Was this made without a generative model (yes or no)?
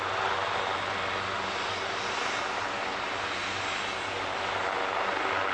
yes